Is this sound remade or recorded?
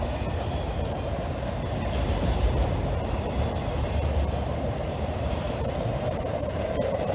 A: remade